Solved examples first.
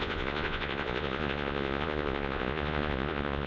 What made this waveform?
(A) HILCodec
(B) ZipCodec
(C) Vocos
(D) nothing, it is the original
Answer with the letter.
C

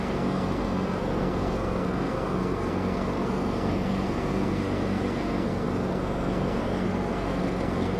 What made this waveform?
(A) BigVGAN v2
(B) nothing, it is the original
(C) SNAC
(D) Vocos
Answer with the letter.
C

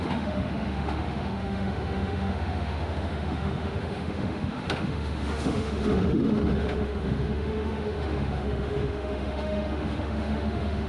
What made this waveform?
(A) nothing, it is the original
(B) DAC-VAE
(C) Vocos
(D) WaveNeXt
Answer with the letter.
B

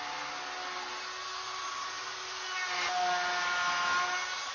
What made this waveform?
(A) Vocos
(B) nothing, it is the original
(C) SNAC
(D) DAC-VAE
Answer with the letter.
B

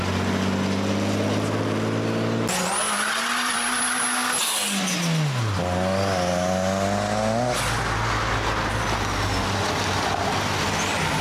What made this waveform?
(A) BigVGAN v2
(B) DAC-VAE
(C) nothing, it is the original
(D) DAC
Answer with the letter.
C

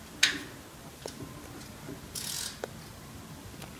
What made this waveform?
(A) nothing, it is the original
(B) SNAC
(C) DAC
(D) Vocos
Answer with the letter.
A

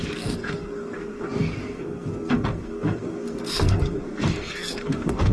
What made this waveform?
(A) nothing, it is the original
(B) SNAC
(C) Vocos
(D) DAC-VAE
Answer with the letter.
B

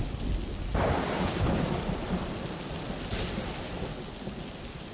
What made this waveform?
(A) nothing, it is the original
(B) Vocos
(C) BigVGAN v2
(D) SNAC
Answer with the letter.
A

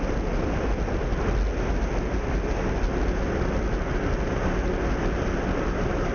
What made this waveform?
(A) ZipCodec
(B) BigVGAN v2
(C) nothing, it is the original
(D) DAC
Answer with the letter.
C